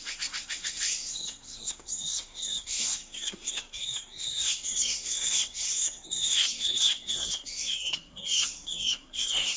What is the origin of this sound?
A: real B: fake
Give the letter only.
B